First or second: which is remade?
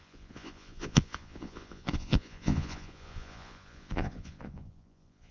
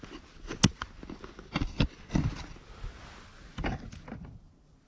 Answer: first